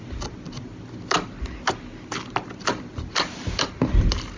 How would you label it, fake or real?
real